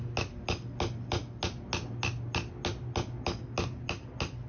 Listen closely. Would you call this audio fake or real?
real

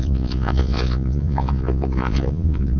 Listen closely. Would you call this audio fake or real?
fake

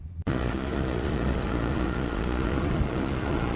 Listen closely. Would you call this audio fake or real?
fake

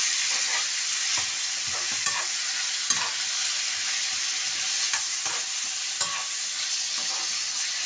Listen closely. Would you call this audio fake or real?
real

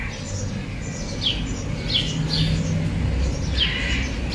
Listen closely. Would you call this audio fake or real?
real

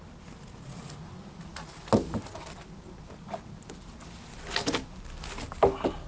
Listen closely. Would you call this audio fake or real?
real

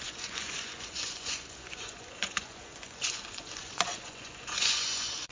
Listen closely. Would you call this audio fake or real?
fake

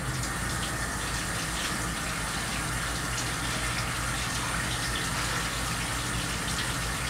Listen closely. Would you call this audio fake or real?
real